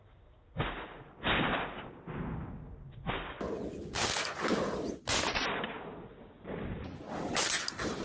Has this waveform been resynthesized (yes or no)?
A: no